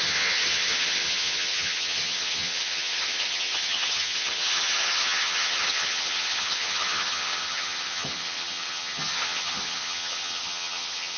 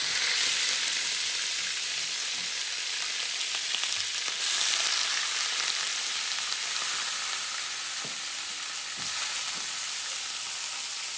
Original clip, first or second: second